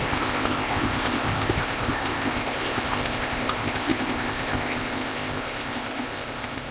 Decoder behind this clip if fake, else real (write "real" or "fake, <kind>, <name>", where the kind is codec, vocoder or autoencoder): fake, codec, ZipCodec